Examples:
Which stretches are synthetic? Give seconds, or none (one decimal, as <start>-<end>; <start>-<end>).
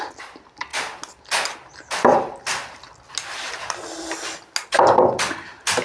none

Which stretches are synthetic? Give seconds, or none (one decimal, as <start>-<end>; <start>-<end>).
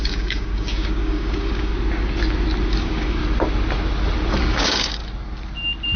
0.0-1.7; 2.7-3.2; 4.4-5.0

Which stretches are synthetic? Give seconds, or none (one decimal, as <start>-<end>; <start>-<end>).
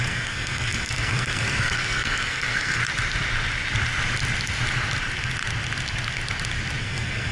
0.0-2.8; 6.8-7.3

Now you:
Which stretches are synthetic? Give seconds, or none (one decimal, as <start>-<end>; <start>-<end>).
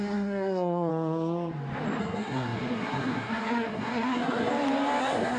0.0-0.9; 2.0-4.5; 5.0-5.4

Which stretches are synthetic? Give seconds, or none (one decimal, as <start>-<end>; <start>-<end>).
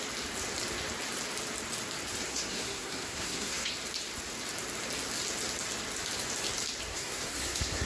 2.3-3.7; 6.9-7.9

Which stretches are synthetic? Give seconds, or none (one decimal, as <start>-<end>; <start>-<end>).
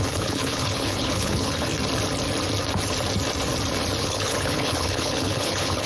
0.0-1.7; 4.0-5.9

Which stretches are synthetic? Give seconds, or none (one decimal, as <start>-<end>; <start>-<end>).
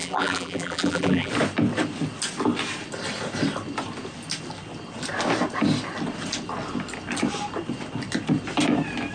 0.0-1.3